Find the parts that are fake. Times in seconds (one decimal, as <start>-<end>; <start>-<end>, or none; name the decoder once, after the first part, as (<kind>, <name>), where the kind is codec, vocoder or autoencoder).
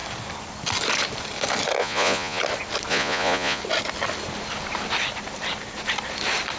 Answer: 1.8-2.4 (vocoder, Vocos); 2.9-3.6